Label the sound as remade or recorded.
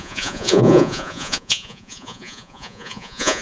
remade